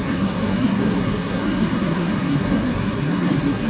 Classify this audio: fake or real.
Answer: fake